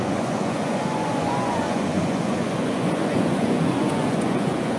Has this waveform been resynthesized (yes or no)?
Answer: yes